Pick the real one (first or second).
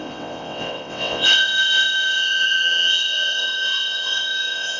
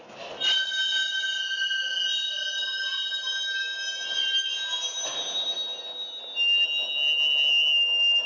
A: second